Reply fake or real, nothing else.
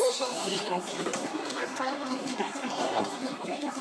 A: fake